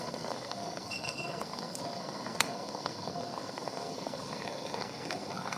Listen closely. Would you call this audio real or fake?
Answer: fake